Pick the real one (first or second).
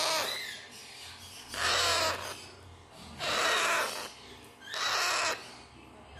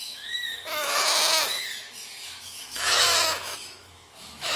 first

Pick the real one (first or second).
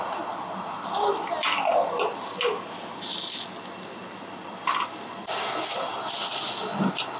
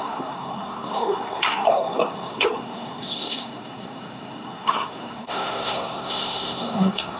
first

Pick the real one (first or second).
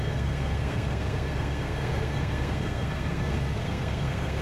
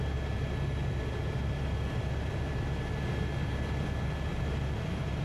second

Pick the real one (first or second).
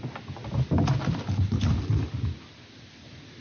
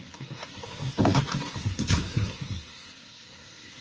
first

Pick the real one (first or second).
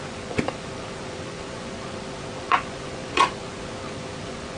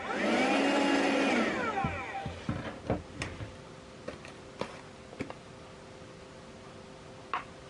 second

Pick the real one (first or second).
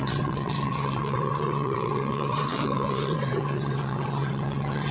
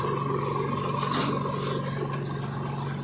second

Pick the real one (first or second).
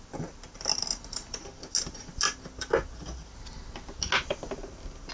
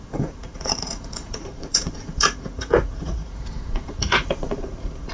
first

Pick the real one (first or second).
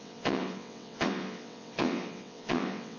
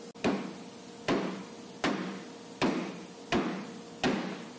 second